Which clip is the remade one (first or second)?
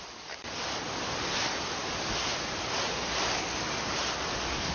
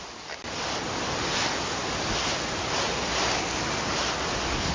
first